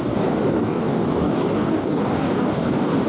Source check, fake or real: fake